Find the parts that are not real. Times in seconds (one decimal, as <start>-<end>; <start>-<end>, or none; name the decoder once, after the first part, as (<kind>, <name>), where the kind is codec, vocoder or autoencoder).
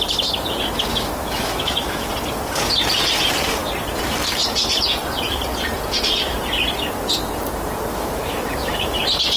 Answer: 0.9-2.1 (autoencoder, DAC-VAE); 7.9-9.0